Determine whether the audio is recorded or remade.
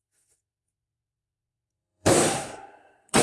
remade